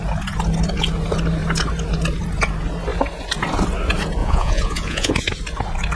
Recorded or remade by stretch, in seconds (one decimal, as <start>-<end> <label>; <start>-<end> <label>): 0.0-4.2 recorded; 4.2-5.1 remade; 5.1-6.0 recorded